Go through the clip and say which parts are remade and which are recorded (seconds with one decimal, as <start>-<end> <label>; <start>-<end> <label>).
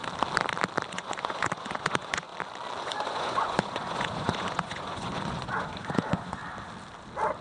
0.0-0.9 recorded; 0.9-2.3 remade; 2.3-2.8 recorded; 2.8-6.4 remade; 6.4-7.4 recorded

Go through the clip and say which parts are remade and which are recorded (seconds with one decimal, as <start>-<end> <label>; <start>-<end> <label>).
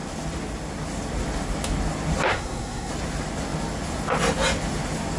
0.0-2.3 recorded; 2.3-2.9 remade; 2.9-5.2 recorded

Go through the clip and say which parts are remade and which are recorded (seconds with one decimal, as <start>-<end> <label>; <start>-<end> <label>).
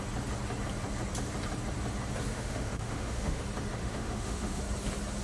0.0-2.3 recorded; 2.3-3.4 remade; 3.4-3.8 recorded; 3.8-4.6 remade; 4.6-5.2 recorded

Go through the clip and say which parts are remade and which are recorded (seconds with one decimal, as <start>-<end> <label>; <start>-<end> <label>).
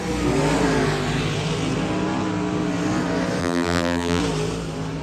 0.0-3.4 recorded; 3.4-4.2 remade; 4.2-5.0 recorded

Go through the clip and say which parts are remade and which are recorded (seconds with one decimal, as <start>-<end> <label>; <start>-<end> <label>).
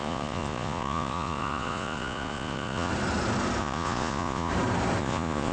0.0-2.9 remade; 2.9-3.6 recorded; 3.6-4.5 remade; 4.5-5.0 recorded; 5.0-5.5 remade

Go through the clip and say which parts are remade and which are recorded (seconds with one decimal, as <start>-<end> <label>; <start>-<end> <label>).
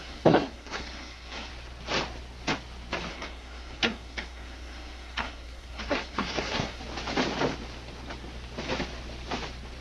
0.0-1.5 remade; 1.5-3.1 recorded; 3.1-6.8 remade; 6.8-9.8 recorded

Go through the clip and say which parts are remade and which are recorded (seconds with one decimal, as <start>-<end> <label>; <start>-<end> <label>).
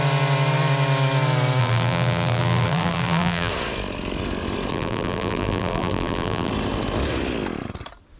0.0-1.6 recorded; 1.6-3.5 remade; 3.5-4.7 recorded; 4.7-6.5 remade; 6.5-8.2 recorded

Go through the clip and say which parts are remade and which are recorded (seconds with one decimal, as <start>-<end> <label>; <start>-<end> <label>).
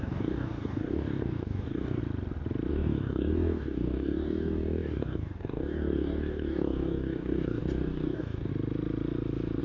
0.0-2.0 remade; 2.0-2.7 recorded; 2.7-8.5 remade; 8.5-9.6 recorded